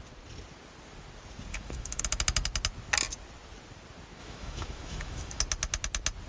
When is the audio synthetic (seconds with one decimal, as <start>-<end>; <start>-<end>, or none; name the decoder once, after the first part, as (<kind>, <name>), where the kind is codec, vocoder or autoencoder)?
1.5-2.0 (autoencoder, DAC-VAE); 4.2-5.4